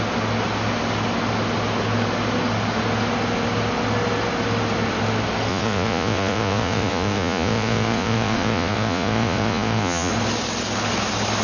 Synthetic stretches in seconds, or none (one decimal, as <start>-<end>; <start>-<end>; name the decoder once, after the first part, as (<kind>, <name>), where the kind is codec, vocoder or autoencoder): 5.5-10.1 (vocoder, Vocos)